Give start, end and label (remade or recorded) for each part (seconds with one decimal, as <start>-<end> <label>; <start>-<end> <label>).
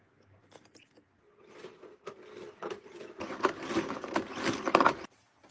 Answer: 0.0-5.5 recorded